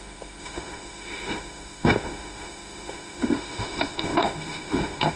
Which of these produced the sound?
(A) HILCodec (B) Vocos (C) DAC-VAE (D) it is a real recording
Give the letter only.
C